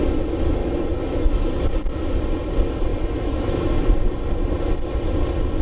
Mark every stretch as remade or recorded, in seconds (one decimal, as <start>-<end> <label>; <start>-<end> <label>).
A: 0.0-0.6 recorded; 0.6-1.5 remade; 1.5-2.9 recorded; 2.9-3.7 remade; 3.7-5.6 recorded